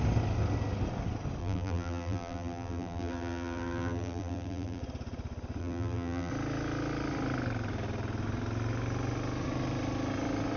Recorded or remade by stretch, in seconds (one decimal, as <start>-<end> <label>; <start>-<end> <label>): 0.0-1.4 recorded; 1.4-4.8 remade; 4.8-5.6 recorded; 5.6-6.3 remade; 6.3-10.6 recorded